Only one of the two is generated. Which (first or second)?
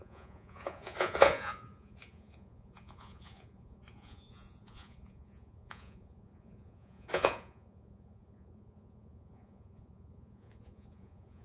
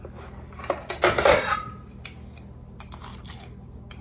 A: first